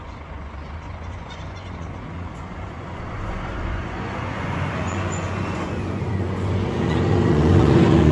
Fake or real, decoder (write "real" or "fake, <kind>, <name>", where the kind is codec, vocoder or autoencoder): fake, vocoder, Vocos